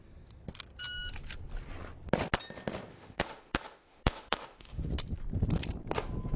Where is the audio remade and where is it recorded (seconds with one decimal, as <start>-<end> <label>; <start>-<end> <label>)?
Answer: 0.0-2.9 recorded; 2.9-4.9 remade; 4.9-6.4 recorded